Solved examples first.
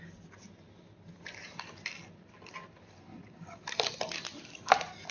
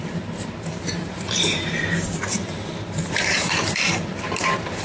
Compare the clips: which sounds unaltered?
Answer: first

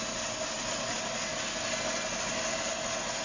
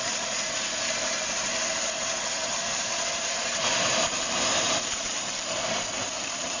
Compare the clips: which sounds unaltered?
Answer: first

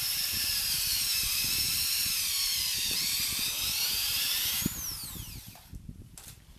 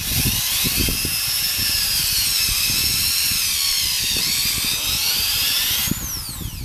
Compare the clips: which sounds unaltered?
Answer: second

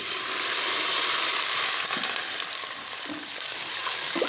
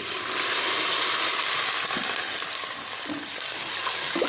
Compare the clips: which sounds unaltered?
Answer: second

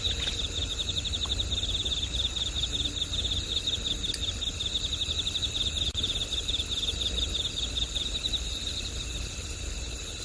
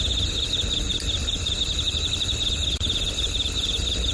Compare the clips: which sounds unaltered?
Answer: first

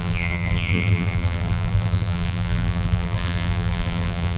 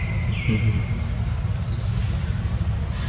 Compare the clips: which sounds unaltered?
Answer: second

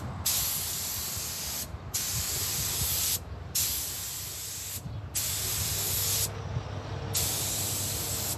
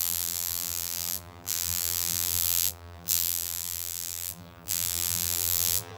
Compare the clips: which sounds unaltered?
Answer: first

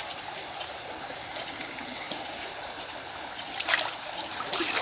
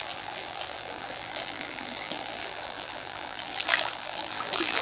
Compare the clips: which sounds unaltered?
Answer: first